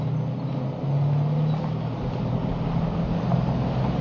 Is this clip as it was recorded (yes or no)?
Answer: yes